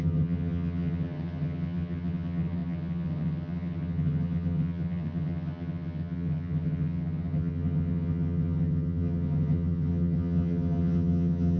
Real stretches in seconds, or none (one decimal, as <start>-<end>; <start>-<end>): none